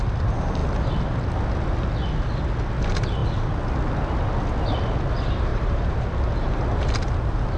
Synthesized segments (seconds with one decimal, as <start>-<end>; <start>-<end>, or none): 5.5-6.1